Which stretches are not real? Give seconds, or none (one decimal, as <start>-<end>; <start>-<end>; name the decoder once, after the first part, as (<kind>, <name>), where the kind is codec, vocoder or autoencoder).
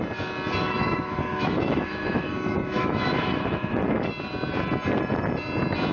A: 0.6-4.1 (autoencoder, DAC-VAE)